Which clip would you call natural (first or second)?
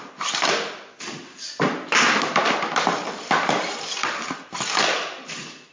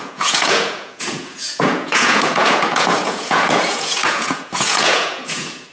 first